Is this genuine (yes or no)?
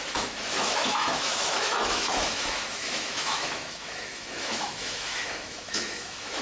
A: no